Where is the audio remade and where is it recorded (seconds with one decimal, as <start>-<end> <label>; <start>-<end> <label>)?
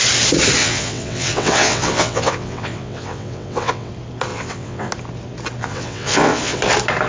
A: 0.0-0.6 recorded; 0.6-3.9 remade; 3.9-4.3 recorded; 4.3-4.9 remade; 4.9-5.6 recorded; 5.6-6.6 remade; 6.6-7.1 recorded